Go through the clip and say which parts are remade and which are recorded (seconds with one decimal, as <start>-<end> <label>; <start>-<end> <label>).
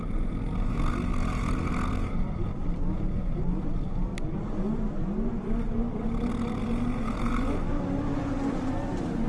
0.0-9.3 recorded